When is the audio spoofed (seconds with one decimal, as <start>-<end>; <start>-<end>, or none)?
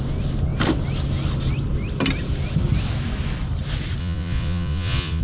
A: 4.0-5.2